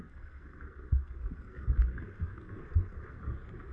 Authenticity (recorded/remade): remade